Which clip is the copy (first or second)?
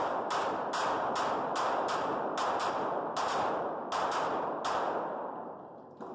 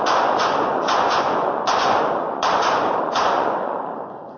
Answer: second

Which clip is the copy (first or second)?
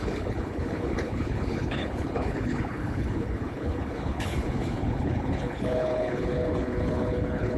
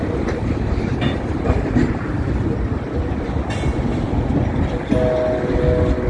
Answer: first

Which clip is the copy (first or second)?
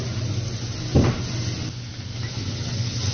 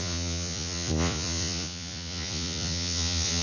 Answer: second